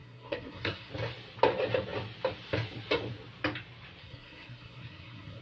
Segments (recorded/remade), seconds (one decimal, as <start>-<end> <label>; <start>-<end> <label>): 0.0-0.9 remade; 0.9-4.0 recorded; 4.0-5.4 remade